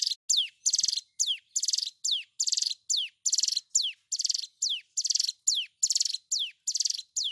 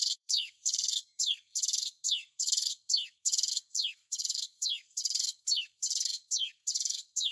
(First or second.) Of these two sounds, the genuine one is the first